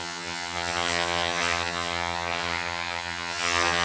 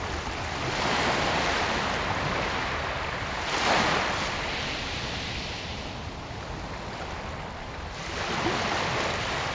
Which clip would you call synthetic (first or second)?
first